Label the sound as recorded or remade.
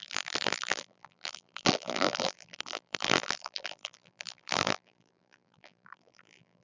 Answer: remade